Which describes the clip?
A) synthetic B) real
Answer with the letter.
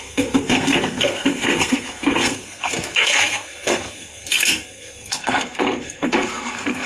A